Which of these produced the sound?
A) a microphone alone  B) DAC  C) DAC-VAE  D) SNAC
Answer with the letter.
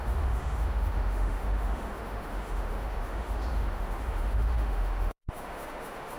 C